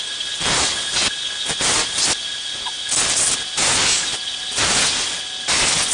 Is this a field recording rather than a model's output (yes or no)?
yes